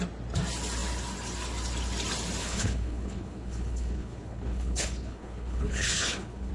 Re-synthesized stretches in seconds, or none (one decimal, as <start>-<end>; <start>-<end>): 2.4-6.5